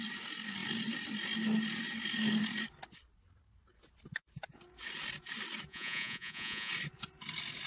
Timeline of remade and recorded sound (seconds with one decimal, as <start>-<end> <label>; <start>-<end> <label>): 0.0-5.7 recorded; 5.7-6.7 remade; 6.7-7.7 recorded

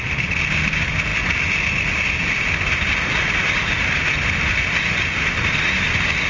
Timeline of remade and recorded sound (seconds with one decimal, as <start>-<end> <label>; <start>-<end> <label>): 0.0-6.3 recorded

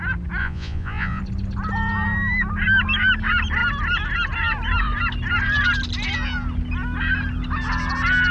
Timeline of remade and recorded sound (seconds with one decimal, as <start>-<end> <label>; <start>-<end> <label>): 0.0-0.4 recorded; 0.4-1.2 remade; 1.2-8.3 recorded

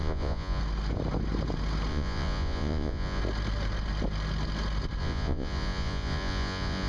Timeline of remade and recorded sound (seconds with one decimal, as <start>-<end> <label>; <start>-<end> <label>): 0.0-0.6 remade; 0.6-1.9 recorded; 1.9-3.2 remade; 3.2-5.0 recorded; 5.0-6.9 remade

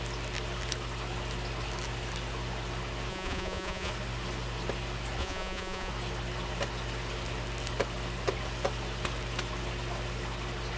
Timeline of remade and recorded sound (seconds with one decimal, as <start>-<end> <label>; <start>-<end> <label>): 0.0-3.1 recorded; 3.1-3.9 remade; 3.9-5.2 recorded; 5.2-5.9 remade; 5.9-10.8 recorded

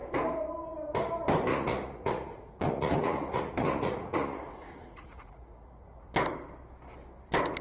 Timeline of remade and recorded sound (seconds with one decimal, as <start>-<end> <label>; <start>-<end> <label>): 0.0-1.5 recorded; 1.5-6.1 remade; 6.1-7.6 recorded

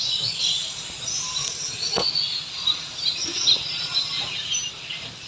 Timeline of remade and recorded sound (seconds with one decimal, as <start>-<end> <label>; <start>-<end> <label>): 0.0-1.4 recorded; 1.4-2.0 remade; 2.0-5.3 recorded

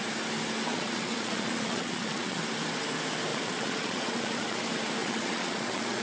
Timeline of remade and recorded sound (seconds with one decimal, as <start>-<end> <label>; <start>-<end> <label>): 0.0-0.7 recorded; 0.7-2.4 remade; 2.4-3.3 recorded; 3.3-4.6 remade; 4.6-5.0 recorded; 5.0-6.0 remade